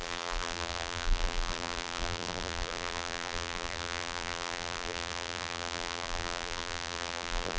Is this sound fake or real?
fake